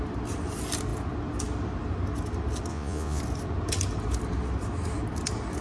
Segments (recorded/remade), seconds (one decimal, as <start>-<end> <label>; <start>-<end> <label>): 0.0-2.7 recorded; 2.7-3.2 remade; 3.2-5.6 recorded